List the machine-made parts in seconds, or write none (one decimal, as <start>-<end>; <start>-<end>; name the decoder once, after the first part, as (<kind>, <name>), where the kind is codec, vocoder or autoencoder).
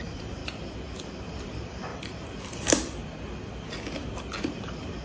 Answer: 0.0-0.4 (vocoder, BigVGAN v2); 1.0-3.0; 4.4-5.0